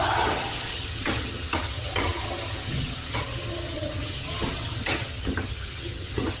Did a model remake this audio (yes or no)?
yes